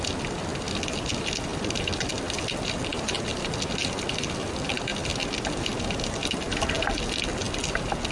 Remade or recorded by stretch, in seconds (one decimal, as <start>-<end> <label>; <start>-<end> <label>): 0.0-8.1 recorded